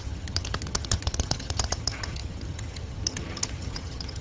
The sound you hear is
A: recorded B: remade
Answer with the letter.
B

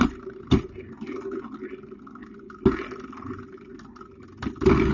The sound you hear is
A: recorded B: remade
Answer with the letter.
A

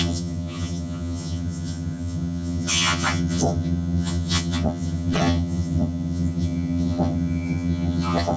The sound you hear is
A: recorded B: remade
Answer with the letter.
B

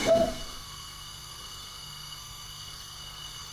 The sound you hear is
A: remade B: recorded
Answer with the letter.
A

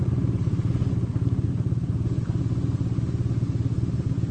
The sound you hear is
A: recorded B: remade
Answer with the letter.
A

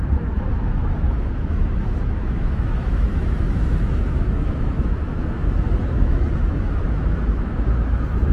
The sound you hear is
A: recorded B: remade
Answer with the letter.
B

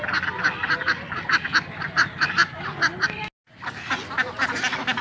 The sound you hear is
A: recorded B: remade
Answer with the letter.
A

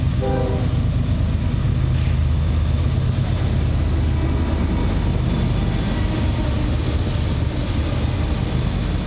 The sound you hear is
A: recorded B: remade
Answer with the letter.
A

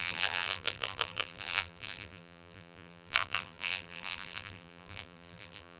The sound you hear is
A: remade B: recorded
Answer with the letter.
A